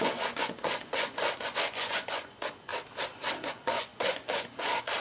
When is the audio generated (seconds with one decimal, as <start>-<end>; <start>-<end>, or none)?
0.0-2.7; 3.5-5.0